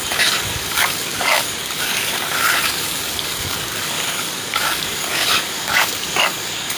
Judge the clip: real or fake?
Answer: fake